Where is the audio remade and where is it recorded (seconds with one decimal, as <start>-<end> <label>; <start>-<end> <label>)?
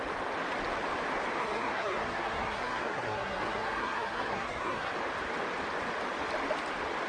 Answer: 0.0-1.4 recorded; 1.4-4.9 remade; 4.9-7.1 recorded